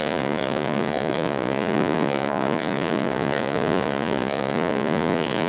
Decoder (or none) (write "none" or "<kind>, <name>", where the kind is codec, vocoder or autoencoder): vocoder, Vocos